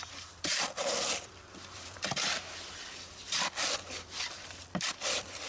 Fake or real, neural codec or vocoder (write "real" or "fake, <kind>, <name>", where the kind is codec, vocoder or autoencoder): fake, vocoder, BigVGAN v2